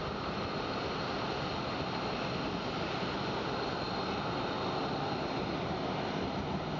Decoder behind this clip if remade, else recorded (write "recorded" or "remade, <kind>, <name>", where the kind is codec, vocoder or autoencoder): recorded